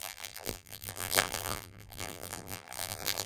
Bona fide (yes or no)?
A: no